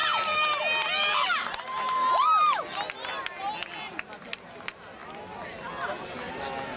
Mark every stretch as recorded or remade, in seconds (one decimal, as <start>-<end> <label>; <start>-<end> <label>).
0.0-6.8 recorded